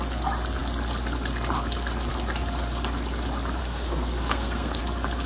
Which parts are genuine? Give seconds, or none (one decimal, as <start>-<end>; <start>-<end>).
0.0-3.6; 4.8-5.3